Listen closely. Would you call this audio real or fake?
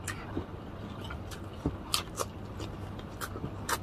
real